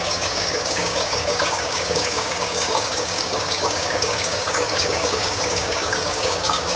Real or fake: fake